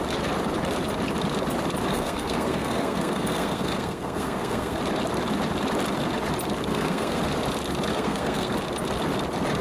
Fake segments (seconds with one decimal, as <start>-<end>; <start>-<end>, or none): 1.9-4.8; 6.7-7.2; 7.9-8.5